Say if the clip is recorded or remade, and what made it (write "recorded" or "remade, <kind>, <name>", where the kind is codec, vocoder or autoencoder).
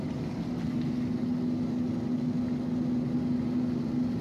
recorded